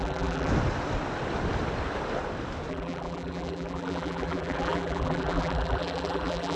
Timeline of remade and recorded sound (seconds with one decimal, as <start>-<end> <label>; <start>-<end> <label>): 0.0-0.5 remade; 0.5-2.7 recorded; 2.7-6.6 remade